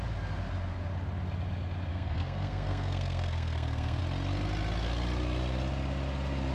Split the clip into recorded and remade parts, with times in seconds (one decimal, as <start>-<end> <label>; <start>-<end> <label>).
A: 0.0-1.9 recorded; 1.9-4.0 remade; 4.0-6.5 recorded